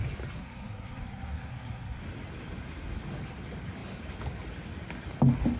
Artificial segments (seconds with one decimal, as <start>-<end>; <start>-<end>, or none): 0.4-2.0